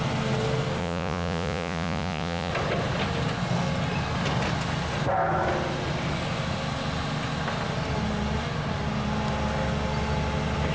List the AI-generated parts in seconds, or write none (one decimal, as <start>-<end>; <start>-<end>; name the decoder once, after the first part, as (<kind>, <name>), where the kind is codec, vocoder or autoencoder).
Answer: 0.8-2.5 (vocoder, Vocos)